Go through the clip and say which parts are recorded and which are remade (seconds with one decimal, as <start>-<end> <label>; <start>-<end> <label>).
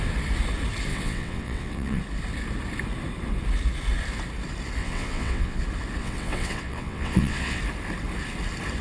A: 0.0-0.9 recorded; 0.9-2.0 remade; 2.0-4.8 recorded; 4.8-5.6 remade; 5.6-6.0 recorded; 6.0-7.6 remade; 7.6-8.8 recorded